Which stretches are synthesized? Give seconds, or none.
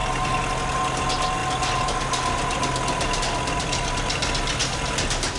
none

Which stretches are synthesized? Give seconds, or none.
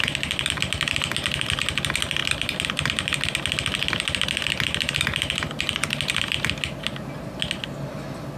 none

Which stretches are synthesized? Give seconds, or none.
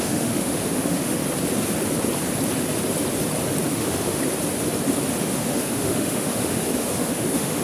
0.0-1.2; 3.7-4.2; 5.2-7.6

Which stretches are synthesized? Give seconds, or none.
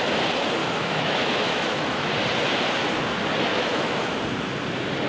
0.6-2.1; 3.5-4.2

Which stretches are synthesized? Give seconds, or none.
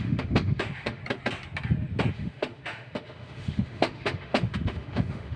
0.0-1.0; 2.1-5.4